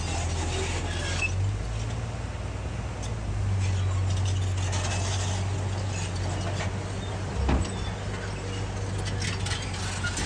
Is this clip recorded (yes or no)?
yes